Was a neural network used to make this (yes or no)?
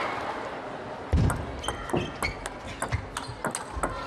no